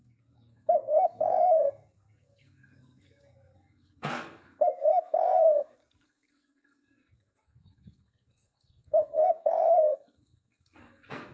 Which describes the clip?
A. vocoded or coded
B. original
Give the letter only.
A